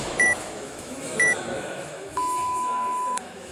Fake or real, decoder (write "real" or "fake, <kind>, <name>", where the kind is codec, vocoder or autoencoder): fake, autoencoder, DAC-VAE